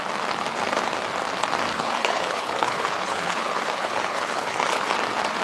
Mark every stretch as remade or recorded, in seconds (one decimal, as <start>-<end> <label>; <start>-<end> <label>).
0.0-1.7 recorded; 1.7-4.9 remade; 4.9-5.4 recorded